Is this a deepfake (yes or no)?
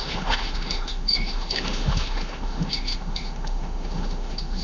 yes